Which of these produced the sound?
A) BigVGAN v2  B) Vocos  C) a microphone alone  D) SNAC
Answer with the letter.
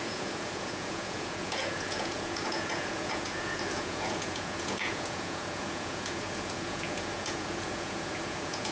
B